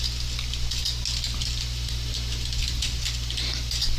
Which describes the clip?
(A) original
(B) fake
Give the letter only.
A